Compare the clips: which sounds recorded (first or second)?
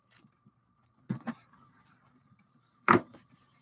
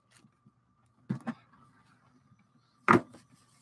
second